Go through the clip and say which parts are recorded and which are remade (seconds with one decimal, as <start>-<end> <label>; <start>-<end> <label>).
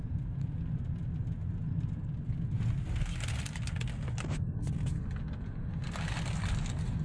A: 0.0-7.0 recorded